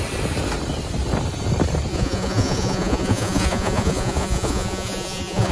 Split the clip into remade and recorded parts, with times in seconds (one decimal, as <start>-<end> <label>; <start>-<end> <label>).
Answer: 0.0-1.9 recorded; 1.9-5.5 remade